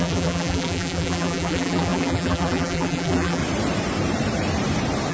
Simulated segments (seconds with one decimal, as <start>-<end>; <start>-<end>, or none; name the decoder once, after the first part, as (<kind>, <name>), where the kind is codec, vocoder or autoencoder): 0.0-3.4 (vocoder, BigVGAN v2)